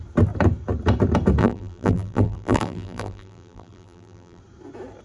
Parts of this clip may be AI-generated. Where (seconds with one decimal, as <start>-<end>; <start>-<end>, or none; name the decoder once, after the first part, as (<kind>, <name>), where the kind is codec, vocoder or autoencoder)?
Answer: 1.4-4.4 (vocoder, BigVGAN v2)